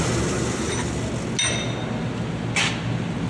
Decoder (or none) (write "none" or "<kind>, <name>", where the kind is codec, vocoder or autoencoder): none